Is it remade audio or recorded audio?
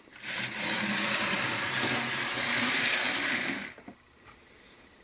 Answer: recorded